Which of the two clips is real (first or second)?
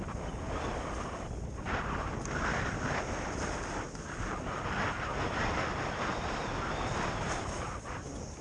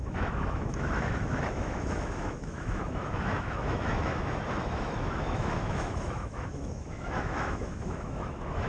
first